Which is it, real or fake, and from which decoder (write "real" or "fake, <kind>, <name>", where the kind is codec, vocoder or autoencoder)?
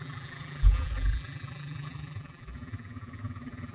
fake, vocoder, BigVGAN v2